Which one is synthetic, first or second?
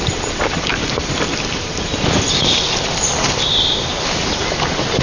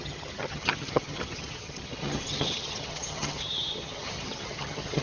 second